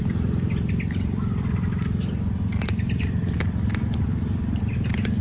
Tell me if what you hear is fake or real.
real